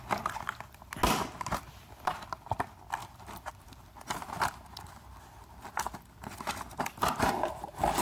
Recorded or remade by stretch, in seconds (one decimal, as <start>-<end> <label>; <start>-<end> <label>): 0.0-3.0 recorded; 3.0-7.3 remade; 7.3-8.0 recorded